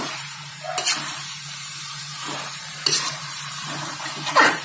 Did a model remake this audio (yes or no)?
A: yes